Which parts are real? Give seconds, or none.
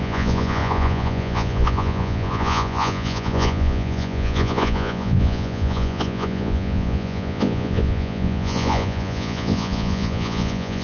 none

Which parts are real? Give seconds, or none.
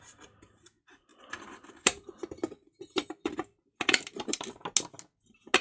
0.0-1.1; 4.5-5.6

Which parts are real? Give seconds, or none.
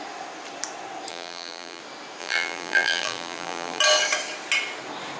0.0-1.1; 1.8-2.2; 3.8-5.2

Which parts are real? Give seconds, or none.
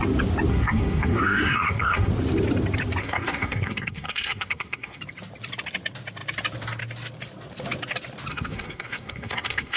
0.0-0.5; 2.1-3.0; 5.0-8.3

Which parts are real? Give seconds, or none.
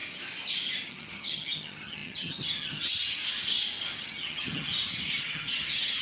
0.0-0.9; 3.2-4.0; 4.7-5.2